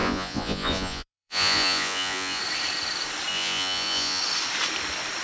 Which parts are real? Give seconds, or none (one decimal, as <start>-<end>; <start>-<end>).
2.4-3.3; 4.2-5.2